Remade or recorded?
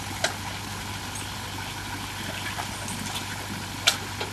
recorded